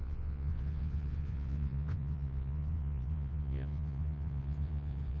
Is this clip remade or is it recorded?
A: remade